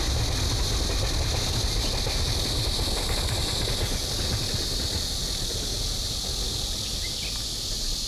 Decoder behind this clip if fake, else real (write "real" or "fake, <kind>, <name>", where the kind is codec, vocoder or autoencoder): real